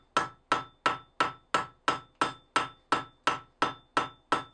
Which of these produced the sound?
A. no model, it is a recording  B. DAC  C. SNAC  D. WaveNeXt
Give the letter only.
A